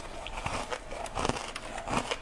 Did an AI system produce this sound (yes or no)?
no